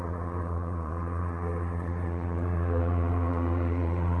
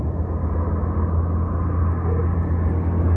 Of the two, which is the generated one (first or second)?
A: first